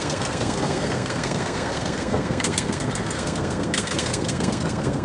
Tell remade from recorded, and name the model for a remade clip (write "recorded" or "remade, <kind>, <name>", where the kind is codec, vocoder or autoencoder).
remade, codec, SNAC